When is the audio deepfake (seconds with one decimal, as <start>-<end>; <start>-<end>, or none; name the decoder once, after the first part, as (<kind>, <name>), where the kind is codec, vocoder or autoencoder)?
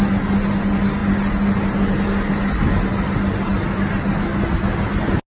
none